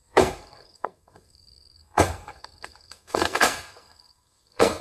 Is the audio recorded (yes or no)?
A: no